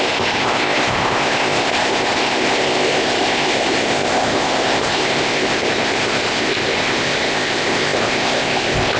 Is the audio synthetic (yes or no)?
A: yes